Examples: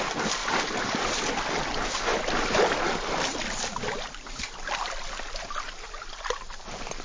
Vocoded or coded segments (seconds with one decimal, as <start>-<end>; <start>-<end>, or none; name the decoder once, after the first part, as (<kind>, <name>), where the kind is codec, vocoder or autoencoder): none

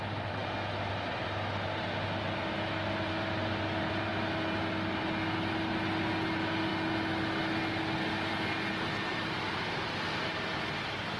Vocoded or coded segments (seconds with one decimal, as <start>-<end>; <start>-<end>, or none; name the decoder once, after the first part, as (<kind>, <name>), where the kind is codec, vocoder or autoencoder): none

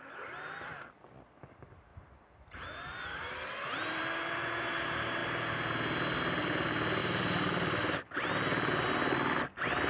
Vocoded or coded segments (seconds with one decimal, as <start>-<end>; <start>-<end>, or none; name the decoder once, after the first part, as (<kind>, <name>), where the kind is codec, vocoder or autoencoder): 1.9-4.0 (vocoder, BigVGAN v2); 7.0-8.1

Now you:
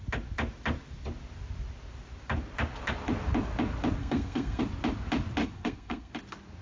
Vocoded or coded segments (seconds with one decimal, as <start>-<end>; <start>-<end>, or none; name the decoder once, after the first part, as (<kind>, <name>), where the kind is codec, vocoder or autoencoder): 4.0-4.6 (codec, SNAC); 5.4-6.1